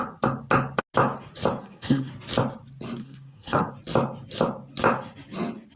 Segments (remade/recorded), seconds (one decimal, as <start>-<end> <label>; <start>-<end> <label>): 0.0-1.6 recorded; 1.6-2.1 remade; 2.1-3.0 recorded; 3.0-3.7 remade; 3.7-5.8 recorded